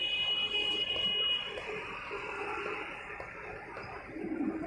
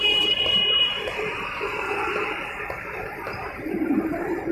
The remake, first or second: second